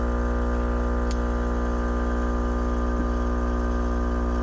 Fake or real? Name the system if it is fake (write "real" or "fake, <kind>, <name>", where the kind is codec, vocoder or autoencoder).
real